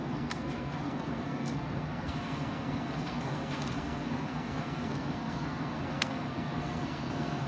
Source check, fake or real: fake